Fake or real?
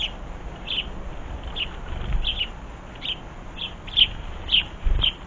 real